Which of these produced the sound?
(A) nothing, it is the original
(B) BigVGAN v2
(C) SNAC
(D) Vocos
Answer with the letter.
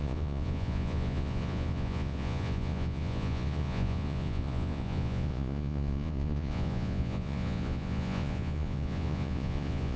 D